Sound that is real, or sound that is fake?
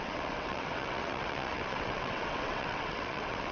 fake